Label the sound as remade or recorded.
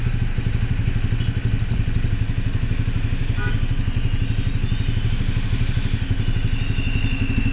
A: recorded